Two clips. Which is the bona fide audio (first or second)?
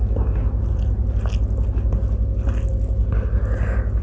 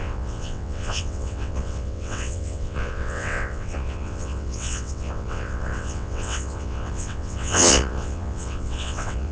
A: first